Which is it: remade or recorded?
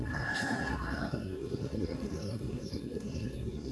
remade